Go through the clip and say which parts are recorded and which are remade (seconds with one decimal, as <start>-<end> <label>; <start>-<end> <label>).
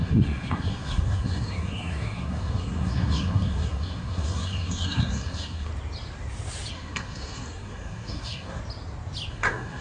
0.0-5.7 remade; 5.7-6.7 recorded; 6.7-8.6 remade; 8.6-9.3 recorded; 9.3-9.8 remade